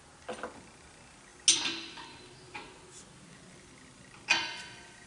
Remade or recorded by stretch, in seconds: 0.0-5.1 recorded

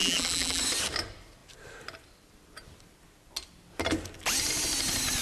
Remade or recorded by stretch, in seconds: 0.0-0.6 remade; 0.6-5.2 recorded

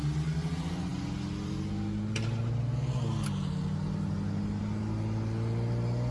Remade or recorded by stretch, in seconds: 0.0-6.1 recorded

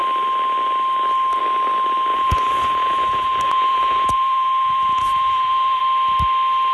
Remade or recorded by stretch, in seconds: 0.0-2.1 recorded; 2.1-5.8 remade; 5.8-6.7 recorded

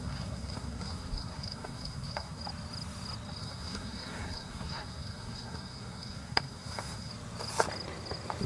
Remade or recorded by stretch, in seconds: 0.0-2.4 remade; 2.4-3.4 recorded; 3.4-7.1 remade; 7.1-8.5 recorded

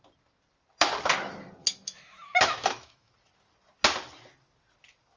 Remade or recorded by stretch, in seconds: 0.0-1.6 recorded; 1.6-3.1 remade; 3.1-5.2 recorded

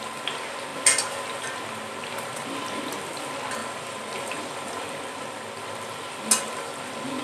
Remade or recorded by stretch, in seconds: 0.0-3.6 recorded; 3.6-4.8 remade; 4.8-7.2 recorded